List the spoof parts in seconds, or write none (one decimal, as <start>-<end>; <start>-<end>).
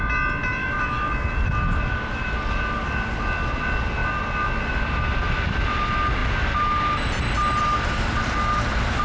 0.6-1.1